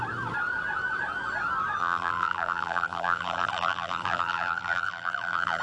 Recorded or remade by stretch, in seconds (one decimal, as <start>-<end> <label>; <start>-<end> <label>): 0.0-1.8 recorded; 1.8-5.6 remade